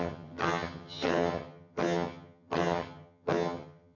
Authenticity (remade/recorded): remade